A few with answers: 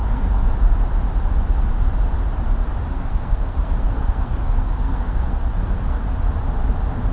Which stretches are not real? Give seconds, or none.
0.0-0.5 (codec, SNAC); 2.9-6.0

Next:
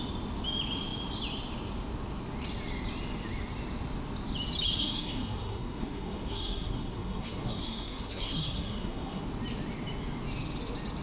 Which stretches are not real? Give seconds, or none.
4.8-9.2 (codec, SNAC)

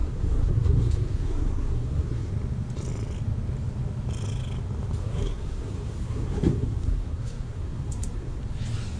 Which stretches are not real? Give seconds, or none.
0.0-2.3 (codec, SNAC); 5.0-8.4

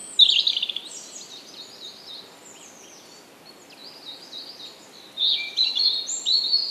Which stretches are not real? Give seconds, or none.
none